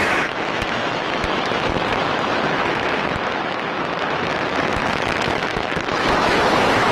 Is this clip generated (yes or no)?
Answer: yes